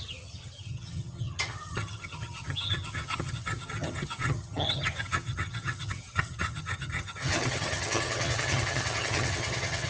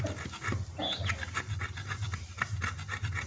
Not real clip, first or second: first